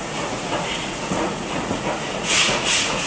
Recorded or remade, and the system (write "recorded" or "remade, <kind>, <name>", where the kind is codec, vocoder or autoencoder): remade, vocoder, Vocos